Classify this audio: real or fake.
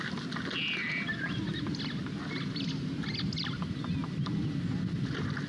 real